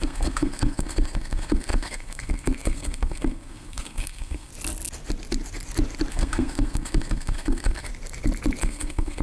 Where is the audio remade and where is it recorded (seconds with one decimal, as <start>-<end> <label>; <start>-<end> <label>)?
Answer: 0.0-4.5 remade; 4.5-6.1 recorded; 6.1-7.9 remade; 7.9-8.6 recorded; 8.6-9.2 remade